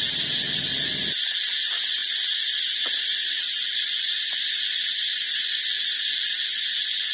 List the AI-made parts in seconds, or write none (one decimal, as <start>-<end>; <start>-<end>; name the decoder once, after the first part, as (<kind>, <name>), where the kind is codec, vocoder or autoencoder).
none